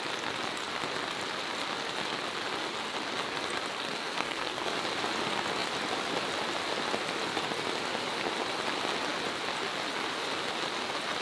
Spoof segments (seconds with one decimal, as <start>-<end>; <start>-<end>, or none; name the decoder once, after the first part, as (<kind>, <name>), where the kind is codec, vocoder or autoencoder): 3.7-4.7 (codec, SNAC)